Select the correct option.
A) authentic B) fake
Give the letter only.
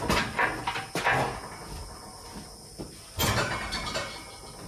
A